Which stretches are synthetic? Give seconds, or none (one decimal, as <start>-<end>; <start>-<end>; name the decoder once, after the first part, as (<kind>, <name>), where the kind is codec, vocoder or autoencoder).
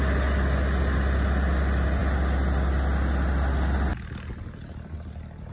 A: none